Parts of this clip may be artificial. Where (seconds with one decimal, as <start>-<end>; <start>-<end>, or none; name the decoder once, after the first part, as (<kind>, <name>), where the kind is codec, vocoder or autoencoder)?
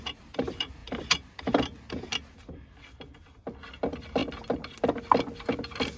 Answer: none